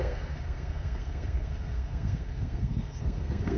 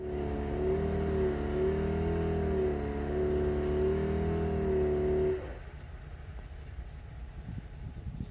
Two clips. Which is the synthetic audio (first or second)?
first